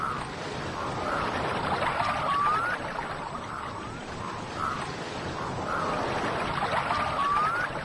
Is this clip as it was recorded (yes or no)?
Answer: yes